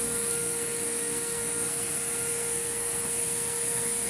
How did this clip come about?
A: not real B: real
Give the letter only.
A